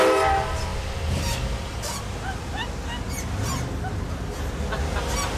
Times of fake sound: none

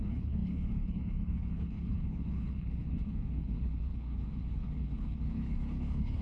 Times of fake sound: 0.0-6.2 (codec, HILCodec)

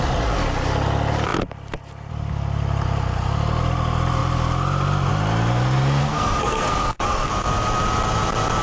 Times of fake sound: 6.0-7.3 (codec, SNAC)

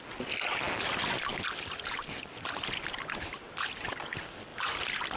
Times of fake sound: none

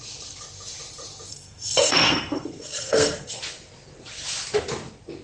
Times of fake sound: 1.3-3.4 (codec, SNAC)

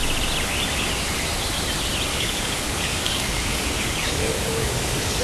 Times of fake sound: 2.1-5.2 (codec, DAC)